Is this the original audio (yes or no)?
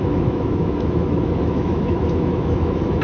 no